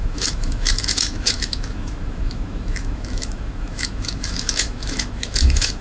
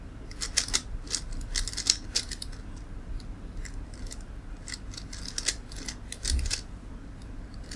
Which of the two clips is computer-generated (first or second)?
first